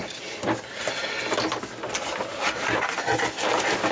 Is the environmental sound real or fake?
real